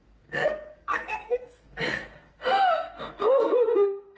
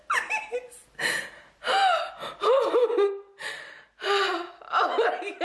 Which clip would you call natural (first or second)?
second